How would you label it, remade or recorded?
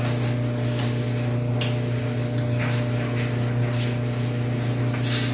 recorded